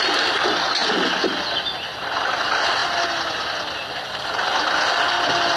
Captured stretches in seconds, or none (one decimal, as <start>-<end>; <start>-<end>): 0.0-5.6